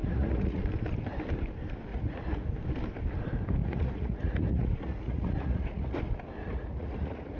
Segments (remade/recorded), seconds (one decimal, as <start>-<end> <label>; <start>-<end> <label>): 0.0-0.6 remade; 0.6-1.9 recorded; 1.9-2.5 remade; 2.5-3.6 recorded; 3.6-6.0 remade; 6.0-6.4 recorded; 6.4-7.4 remade